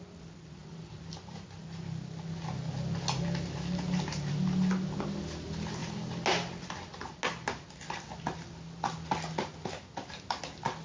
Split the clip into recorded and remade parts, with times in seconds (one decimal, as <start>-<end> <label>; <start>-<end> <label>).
0.0-10.8 recorded